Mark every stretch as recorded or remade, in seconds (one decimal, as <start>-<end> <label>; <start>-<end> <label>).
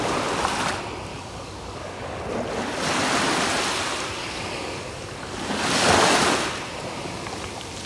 0.0-1.1 recorded; 1.1-2.2 remade; 2.2-4.2 recorded; 4.2-5.6 remade; 5.6-7.9 recorded